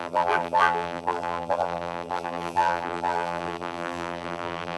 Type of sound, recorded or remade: remade